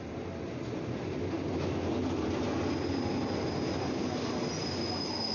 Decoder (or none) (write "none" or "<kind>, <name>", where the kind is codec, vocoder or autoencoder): none